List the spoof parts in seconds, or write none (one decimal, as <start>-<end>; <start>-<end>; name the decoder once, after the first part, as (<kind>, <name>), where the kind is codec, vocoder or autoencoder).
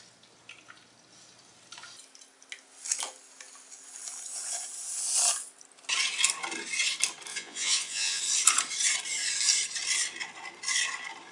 7.3-8.2 (vocoder, Vocos)